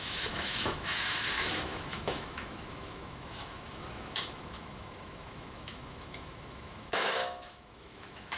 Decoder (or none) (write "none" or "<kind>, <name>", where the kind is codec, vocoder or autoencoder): autoencoder, DAC-VAE